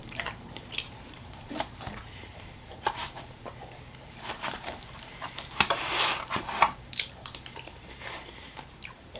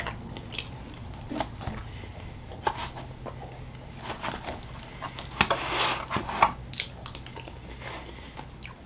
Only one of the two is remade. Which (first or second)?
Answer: first